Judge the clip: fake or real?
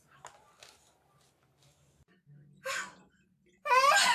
real